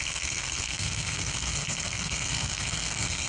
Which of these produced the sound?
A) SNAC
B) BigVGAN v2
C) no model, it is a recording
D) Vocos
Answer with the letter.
A